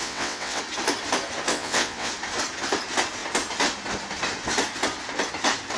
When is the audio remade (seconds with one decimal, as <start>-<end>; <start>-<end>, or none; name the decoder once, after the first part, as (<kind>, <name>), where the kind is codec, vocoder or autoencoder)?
0.0-0.6 (vocoder, WaveNeXt); 1.5-2.1